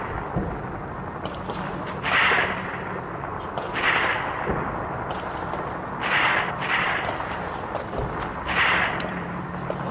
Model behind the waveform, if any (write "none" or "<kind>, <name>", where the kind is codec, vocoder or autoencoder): vocoder, BigVGAN v2